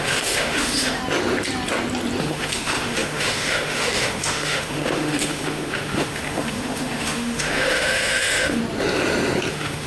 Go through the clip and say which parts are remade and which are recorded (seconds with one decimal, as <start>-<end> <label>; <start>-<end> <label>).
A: 0.0-1.0 remade; 1.0-2.2 recorded; 2.2-8.6 remade; 8.6-9.5 recorded; 9.5-9.9 remade